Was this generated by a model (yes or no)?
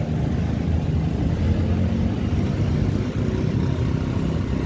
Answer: no